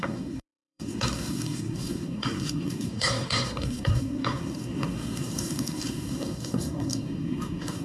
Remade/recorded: remade